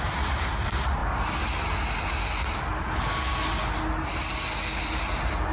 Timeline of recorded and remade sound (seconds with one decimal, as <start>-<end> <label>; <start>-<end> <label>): 0.0-5.5 recorded